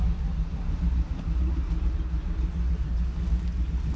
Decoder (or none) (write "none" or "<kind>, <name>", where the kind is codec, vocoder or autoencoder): none